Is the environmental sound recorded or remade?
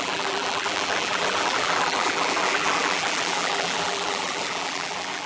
remade